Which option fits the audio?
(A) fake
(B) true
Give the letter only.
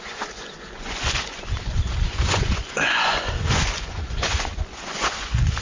A